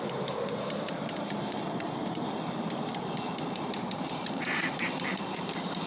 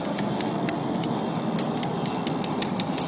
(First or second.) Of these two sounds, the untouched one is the second